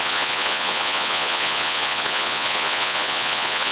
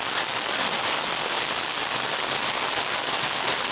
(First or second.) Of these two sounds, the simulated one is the first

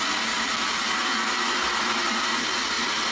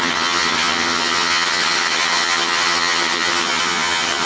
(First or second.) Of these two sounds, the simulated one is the second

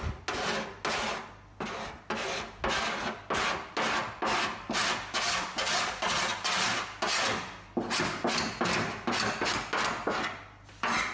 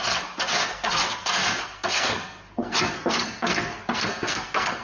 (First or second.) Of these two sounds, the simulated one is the second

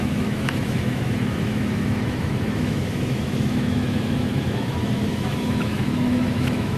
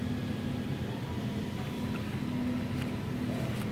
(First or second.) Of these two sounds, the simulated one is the first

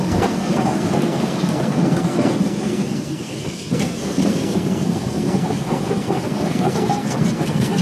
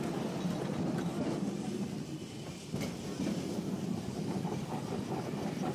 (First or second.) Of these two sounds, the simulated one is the first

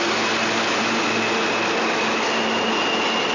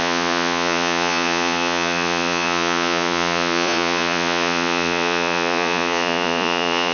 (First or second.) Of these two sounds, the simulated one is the second